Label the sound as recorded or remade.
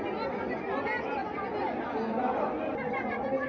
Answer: recorded